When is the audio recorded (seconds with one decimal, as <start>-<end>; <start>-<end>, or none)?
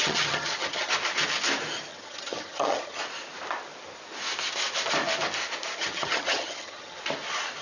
0.9-1.9; 3.0-5.8; 7.0-7.6